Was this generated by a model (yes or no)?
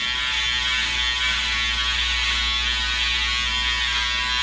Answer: no